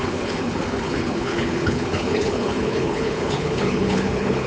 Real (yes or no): no